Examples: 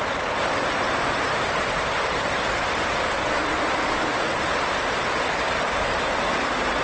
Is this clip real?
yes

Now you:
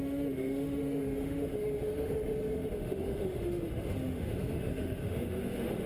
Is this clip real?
no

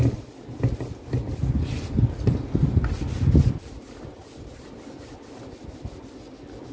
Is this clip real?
yes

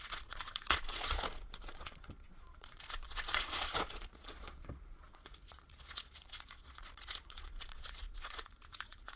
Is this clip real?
no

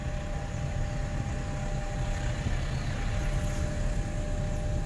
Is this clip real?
yes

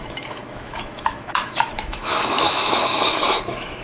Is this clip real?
no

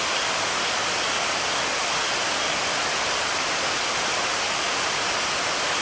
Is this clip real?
yes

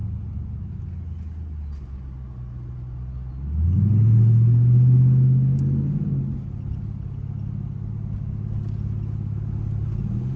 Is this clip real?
yes